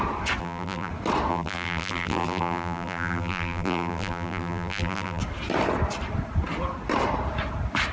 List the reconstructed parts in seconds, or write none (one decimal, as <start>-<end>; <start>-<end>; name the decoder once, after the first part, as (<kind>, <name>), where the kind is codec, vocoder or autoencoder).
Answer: 0.4-0.9 (vocoder, BigVGAN v2); 1.3-5.2